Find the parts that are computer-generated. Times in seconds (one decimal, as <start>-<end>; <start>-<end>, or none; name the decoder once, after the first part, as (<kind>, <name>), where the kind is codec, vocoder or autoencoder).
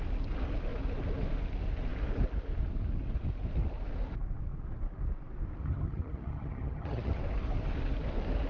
5.6-7.2 (vocoder, HiFi-GAN)